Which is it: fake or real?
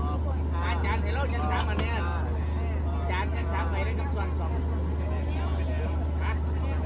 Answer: real